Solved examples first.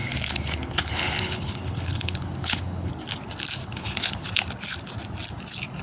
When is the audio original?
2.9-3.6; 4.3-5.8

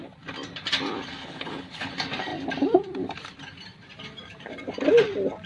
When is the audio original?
0.0-1.2; 1.9-5.5

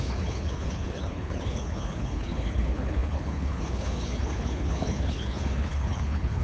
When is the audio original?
none

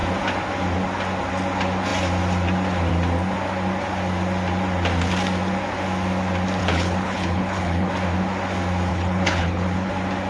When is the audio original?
0.0-6.6; 7.9-8.9; 9.9-10.3

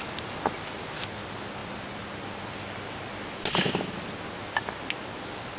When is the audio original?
0.0-5.6

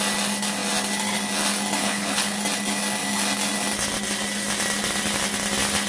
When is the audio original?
0.0-1.8; 2.4-5.9